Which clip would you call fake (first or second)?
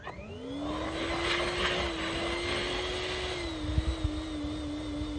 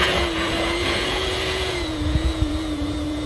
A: second